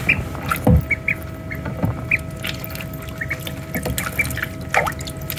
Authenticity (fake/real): real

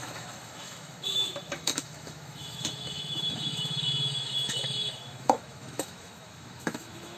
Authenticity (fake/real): fake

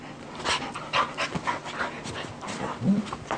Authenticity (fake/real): real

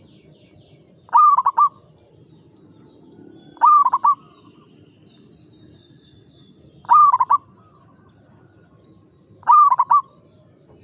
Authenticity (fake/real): real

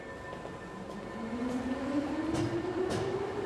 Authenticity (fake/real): real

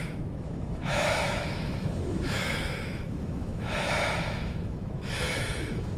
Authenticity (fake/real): fake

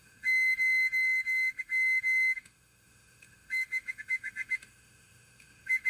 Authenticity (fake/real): fake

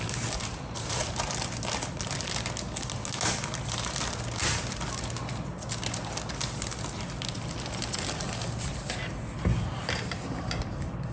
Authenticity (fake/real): real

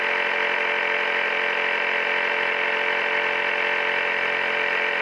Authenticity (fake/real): real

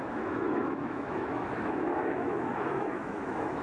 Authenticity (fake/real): fake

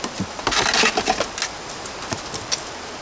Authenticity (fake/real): real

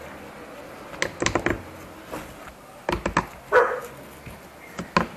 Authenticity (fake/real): real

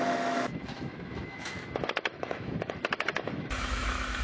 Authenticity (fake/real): fake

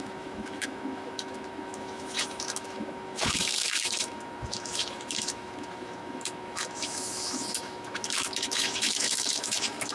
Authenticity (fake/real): fake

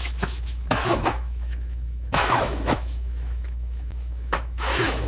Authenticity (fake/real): fake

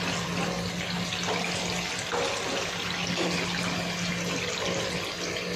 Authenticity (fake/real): real